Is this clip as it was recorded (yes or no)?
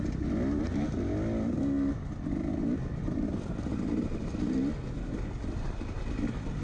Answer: yes